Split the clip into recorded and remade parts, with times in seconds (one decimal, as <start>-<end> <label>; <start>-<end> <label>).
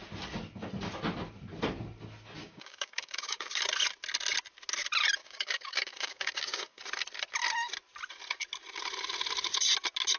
0.0-2.4 recorded; 2.4-3.6 remade; 3.6-5.2 recorded; 5.2-6.8 remade; 6.8-10.2 recorded